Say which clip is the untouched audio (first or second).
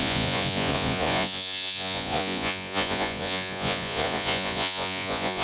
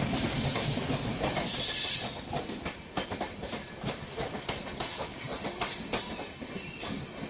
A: second